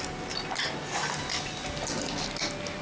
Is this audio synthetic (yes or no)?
no